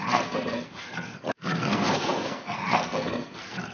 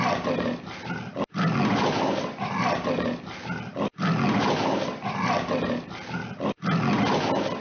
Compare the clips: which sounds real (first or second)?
second